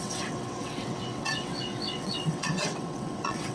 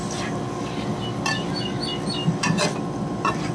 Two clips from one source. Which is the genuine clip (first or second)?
second